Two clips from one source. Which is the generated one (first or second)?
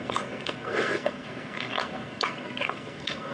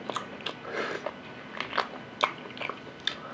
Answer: first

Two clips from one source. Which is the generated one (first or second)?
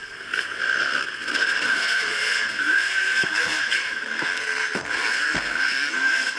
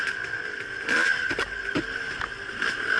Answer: first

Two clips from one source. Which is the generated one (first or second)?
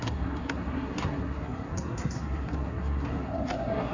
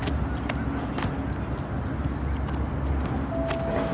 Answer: first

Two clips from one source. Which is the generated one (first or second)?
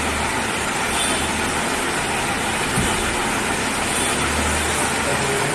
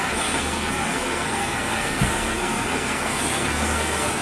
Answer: second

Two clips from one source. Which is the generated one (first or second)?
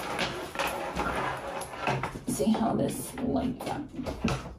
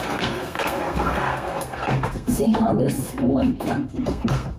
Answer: second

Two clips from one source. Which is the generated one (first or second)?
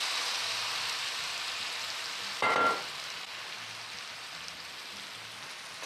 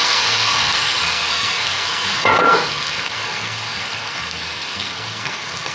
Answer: second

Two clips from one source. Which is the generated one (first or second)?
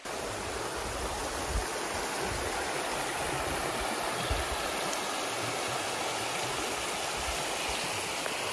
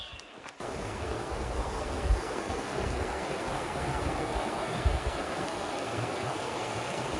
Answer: second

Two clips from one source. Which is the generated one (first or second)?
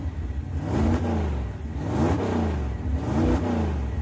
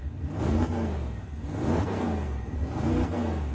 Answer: second